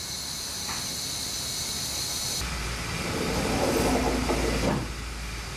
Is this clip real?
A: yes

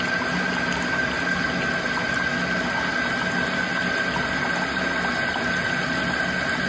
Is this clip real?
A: yes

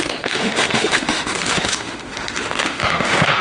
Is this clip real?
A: no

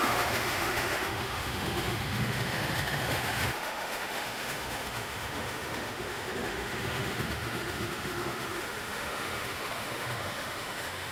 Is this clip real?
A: no